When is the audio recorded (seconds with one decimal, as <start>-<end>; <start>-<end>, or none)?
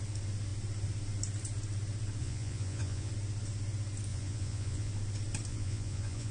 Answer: 0.0-2.2; 3.1-4.1; 4.9-5.5